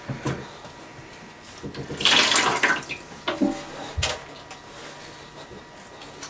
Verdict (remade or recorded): recorded